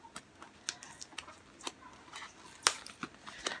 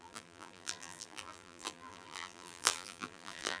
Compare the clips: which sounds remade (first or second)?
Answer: second